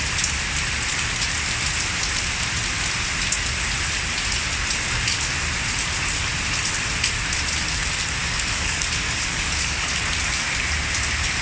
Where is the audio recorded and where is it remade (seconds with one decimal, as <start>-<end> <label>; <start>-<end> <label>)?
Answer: 0.0-8.2 recorded; 8.2-10.0 remade; 10.0-11.4 recorded